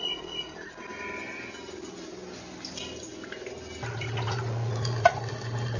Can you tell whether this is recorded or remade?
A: recorded